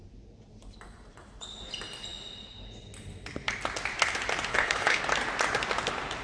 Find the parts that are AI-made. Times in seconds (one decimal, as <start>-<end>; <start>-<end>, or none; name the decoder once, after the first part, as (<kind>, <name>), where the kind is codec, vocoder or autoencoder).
4.5-5.0 (codec, HILCodec)